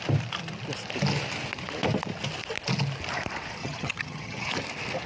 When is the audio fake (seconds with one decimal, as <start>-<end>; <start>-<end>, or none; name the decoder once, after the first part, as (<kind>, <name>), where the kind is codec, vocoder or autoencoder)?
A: 3.6-4.5 (vocoder, HiFi-GAN)